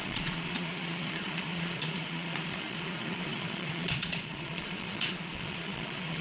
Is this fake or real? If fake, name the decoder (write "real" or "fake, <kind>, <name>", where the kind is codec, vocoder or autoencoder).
fake, vocoder, Vocos